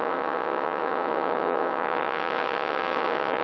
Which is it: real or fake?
fake